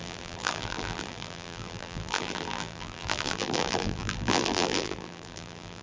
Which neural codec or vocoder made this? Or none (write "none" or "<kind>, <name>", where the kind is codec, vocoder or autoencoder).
vocoder, BigVGAN v2